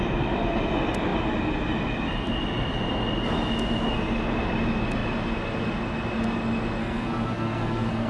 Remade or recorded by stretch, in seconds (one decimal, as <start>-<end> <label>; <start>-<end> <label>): 0.0-6.8 recorded; 6.8-8.1 remade